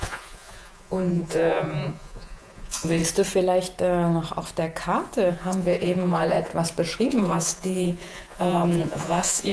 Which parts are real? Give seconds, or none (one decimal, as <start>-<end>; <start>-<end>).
3.0-5.3; 6.5-7.0